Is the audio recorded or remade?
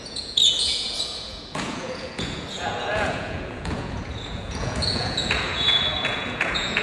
remade